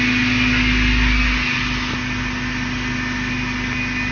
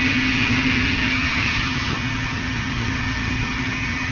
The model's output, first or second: second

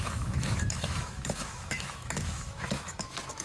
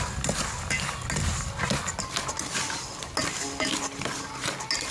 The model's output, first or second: first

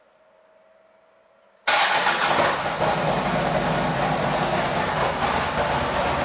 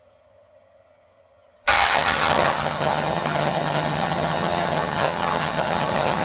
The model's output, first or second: second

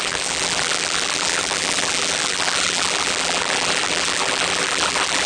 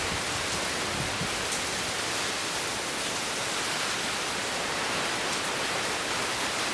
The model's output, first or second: first